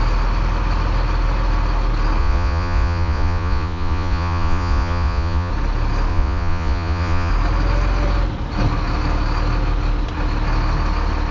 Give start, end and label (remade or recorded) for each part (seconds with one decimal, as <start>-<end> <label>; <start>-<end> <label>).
0.0-2.2 recorded; 2.2-5.5 remade; 5.5-6.1 recorded; 6.1-7.3 remade; 7.3-11.3 recorded